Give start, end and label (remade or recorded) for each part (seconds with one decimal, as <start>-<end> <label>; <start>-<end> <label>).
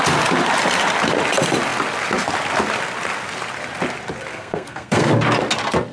0.0-4.3 recorded; 4.3-5.1 remade; 5.1-5.9 recorded